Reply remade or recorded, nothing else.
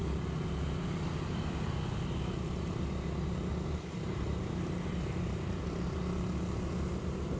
recorded